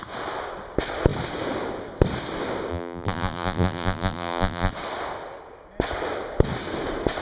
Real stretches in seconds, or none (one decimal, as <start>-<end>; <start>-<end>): 0.0-2.7; 4.7-7.2